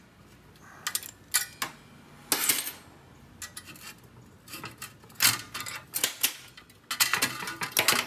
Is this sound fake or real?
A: real